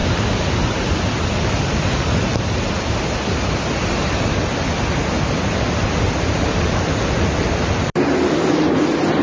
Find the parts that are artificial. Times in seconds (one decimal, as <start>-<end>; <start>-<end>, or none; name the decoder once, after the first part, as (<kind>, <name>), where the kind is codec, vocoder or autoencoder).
none